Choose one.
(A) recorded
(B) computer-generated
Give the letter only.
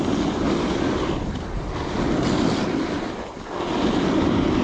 A